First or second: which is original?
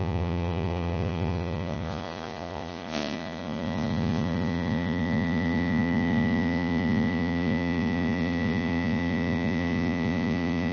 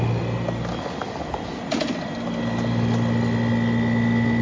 second